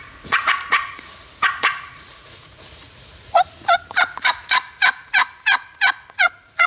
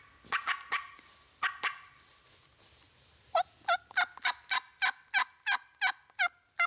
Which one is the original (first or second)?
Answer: second